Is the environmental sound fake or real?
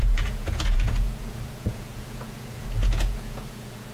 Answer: fake